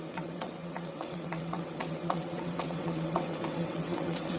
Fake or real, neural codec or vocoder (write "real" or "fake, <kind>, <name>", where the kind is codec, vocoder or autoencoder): fake, vocoder, WaveNeXt